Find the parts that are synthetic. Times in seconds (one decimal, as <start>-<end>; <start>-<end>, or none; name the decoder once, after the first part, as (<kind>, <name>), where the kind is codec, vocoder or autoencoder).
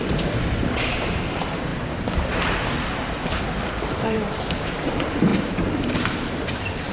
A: 0.0-6.9 (vocoder, BigVGAN v2)